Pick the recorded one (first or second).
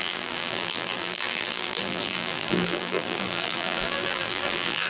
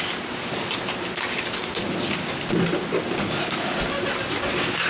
second